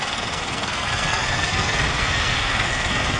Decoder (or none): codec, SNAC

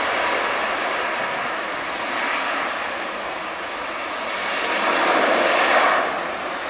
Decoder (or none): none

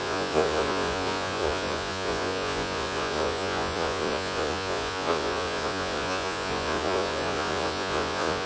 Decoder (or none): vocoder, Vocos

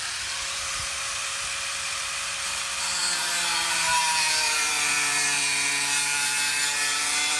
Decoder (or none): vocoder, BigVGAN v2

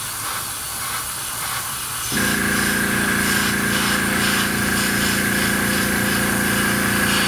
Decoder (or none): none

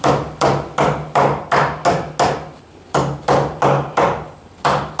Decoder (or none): none